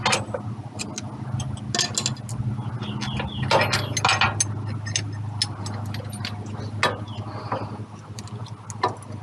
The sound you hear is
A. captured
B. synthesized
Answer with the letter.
A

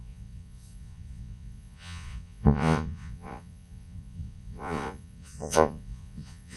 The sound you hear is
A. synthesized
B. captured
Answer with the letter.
A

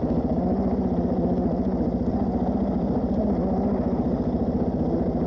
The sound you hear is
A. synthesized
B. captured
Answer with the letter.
B